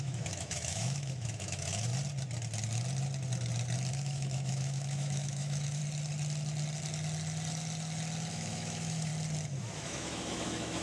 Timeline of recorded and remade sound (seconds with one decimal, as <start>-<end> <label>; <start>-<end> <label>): 0.0-1.9 remade; 1.9-3.9 recorded; 3.9-5.8 remade; 5.8-8.3 recorded; 8.3-9.1 remade; 9.1-9.6 recorded; 9.6-10.8 remade